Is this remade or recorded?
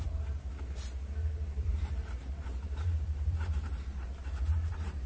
remade